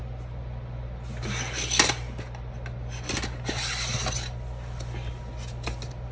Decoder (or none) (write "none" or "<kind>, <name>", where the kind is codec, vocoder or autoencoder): none